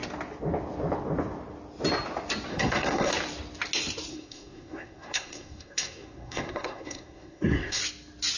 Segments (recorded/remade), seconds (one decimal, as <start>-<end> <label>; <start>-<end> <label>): 0.0-2.5 recorded; 2.5-3.1 remade; 3.1-4.1 recorded; 4.1-7.8 remade; 7.8-8.4 recorded

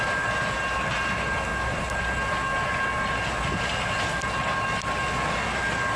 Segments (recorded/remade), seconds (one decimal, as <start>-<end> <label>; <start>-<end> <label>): 0.0-6.0 recorded

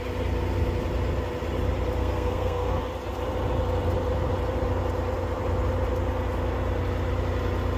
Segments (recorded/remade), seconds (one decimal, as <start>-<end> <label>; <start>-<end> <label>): 0.0-2.0 recorded; 2.0-2.8 remade; 2.8-7.8 recorded

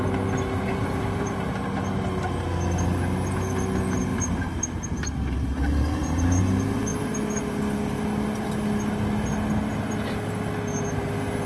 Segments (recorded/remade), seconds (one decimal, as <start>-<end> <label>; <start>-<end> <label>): 0.0-0.7 recorded; 0.7-1.5 remade; 1.5-4.1 recorded; 4.1-6.4 remade; 6.4-11.5 recorded

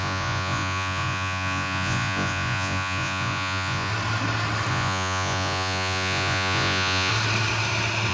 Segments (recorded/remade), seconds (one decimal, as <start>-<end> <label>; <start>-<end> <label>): 0.0-3.9 remade; 3.9-4.7 recorded; 4.7-7.1 remade; 7.1-8.1 recorded

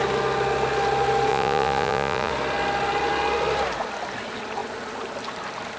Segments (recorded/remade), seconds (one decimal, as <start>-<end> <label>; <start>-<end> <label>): 0.0-1.3 recorded; 1.3-2.3 remade; 2.3-5.8 recorded

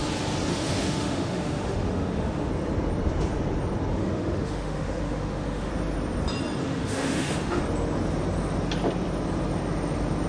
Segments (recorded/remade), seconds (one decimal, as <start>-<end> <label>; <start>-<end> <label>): 0.0-0.5 recorded; 0.5-2.5 remade; 2.5-3.9 recorded; 3.9-5.7 remade; 5.7-6.6 recorded; 6.6-7.6 remade; 7.6-10.3 recorded

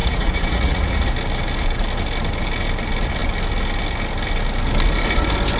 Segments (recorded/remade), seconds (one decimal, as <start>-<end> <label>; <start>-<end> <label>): 0.0-1.1 remade; 1.1-5.6 recorded